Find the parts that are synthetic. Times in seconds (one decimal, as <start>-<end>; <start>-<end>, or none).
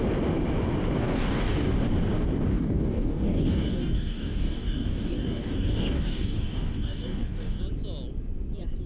1.0-1.7; 2.5-7.6